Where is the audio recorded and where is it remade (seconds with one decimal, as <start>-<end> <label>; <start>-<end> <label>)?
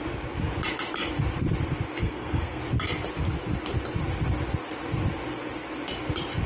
0.0-2.0 recorded; 2.0-2.6 remade; 2.6-6.5 recorded